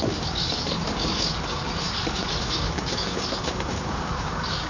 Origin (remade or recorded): remade